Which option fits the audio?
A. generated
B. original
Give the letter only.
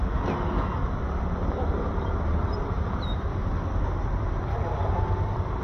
B